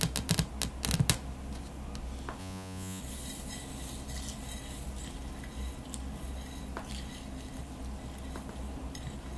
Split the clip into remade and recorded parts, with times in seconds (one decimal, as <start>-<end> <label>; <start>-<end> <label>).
0.0-2.4 recorded; 2.4-3.0 remade; 3.0-9.4 recorded